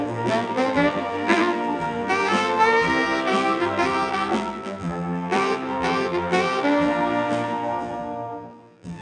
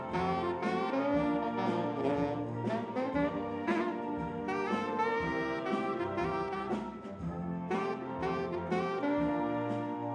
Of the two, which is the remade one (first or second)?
first